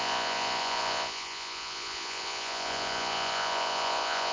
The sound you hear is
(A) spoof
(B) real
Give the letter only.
A